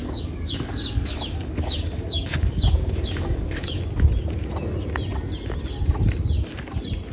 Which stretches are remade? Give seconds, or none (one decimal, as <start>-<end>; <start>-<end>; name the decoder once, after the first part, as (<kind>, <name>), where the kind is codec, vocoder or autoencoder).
0.0-3.8 (codec, DAC)